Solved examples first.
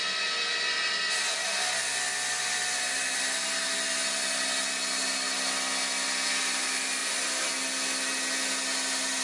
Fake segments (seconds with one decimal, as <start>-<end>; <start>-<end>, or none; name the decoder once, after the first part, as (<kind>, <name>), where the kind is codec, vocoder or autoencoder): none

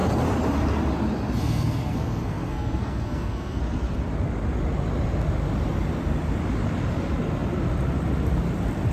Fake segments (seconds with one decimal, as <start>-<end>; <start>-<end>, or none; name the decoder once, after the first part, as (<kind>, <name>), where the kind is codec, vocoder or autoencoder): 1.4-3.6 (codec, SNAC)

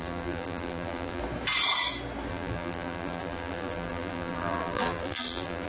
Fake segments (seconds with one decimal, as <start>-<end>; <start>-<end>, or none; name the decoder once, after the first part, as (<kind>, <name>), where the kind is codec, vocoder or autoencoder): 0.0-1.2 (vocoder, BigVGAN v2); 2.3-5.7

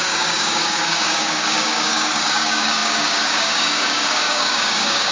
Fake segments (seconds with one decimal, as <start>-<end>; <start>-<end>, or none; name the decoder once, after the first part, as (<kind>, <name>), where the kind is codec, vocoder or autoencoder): 0.0-5.1 (codec, DAC)